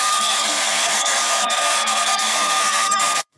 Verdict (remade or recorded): remade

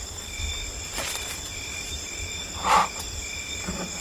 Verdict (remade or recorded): remade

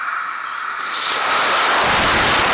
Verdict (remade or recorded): recorded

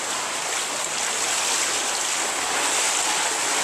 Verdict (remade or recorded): recorded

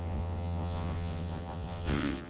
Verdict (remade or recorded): remade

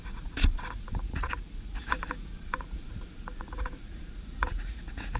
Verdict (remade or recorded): remade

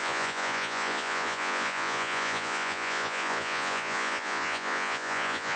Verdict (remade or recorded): remade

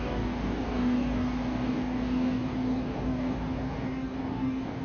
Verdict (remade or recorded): remade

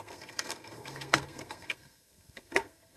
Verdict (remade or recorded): remade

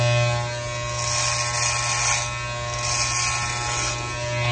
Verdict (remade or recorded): recorded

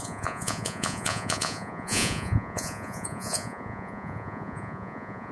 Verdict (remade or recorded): remade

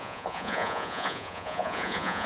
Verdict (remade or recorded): remade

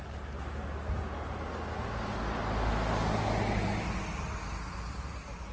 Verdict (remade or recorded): recorded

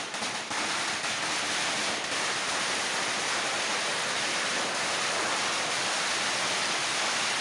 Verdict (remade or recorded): recorded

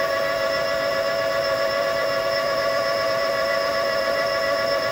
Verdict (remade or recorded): remade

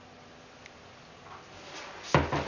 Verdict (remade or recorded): recorded